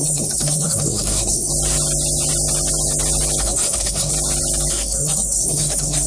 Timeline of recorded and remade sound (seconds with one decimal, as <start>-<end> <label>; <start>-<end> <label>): 0.0-1.5 remade; 1.5-3.4 recorded; 3.4-4.1 remade; 4.1-4.7 recorded; 4.7-6.1 remade